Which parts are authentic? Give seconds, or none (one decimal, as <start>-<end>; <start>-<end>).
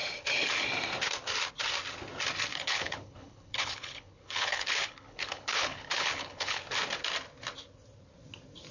0.0-2.5; 6.6-8.7